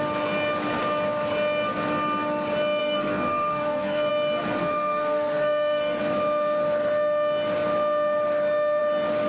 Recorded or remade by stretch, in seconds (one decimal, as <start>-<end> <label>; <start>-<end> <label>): 0.0-2.8 recorded; 2.8-4.1 remade; 4.1-4.6 recorded; 4.6-6.0 remade; 6.0-9.3 recorded